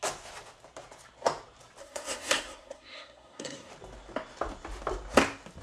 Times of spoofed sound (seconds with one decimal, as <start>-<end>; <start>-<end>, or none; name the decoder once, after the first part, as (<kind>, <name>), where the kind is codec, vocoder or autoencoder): 1.8-3.7 (codec, SNAC)